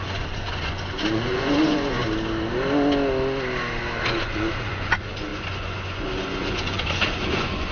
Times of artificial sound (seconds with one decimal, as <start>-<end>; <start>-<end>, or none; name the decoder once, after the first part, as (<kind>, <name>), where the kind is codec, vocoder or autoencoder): 0.0-2.0 (vocoder, Vocos); 4.1-7.7